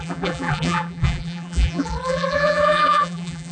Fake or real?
fake